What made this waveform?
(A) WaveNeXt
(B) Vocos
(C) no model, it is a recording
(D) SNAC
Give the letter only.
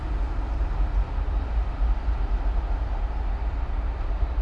C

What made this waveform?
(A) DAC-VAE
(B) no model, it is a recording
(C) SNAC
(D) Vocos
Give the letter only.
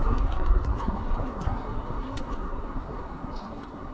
C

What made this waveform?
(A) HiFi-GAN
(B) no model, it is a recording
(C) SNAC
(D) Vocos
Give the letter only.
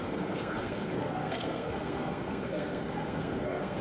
C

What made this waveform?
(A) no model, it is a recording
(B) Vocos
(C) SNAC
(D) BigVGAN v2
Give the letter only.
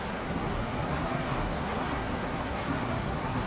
C